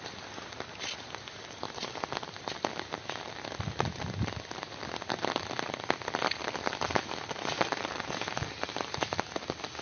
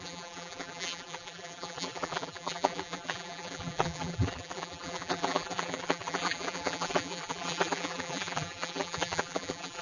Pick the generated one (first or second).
second